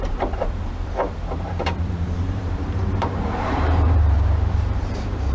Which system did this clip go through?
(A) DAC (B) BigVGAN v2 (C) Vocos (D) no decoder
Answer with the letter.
B